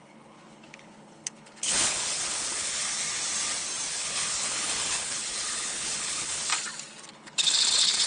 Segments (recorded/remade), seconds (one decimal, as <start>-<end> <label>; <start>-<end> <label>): 0.0-2.9 remade; 2.9-3.9 recorded; 3.9-6.5 remade; 6.5-7.1 recorded; 7.1-8.1 remade